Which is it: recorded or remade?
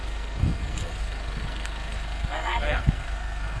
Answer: remade